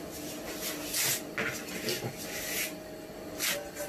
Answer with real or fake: real